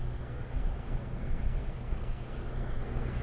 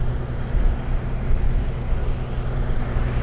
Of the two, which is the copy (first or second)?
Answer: first